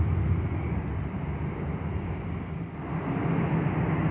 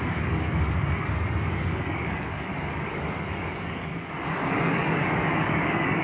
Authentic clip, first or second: first